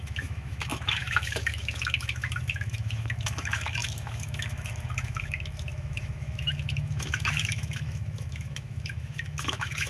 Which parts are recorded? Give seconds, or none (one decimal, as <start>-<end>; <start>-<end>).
none